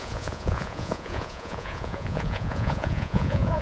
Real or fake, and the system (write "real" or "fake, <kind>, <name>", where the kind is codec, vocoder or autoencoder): fake, vocoder, Vocos